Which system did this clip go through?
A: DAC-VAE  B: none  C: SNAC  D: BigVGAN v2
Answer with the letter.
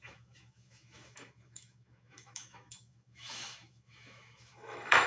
A